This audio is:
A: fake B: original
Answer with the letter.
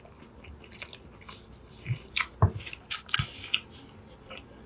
B